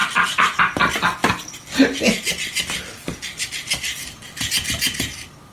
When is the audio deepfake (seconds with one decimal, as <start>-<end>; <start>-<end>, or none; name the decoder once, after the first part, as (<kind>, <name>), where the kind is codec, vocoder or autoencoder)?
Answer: none